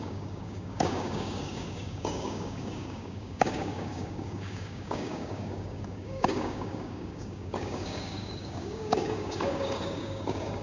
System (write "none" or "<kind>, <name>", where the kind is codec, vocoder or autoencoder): codec, DAC